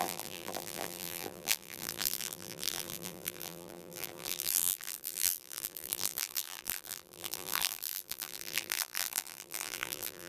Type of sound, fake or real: fake